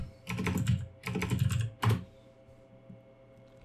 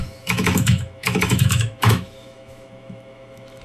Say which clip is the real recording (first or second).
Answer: first